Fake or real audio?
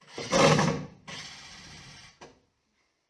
real